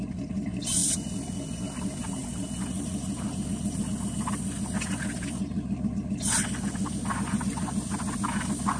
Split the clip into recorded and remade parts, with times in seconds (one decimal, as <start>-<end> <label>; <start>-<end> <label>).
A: 0.0-8.8 recorded